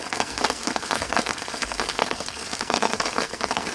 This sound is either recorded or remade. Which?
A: remade